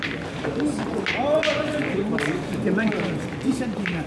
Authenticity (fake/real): fake